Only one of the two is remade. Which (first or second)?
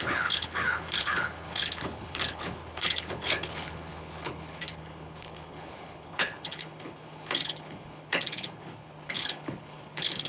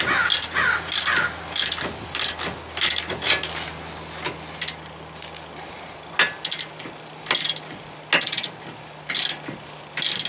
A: first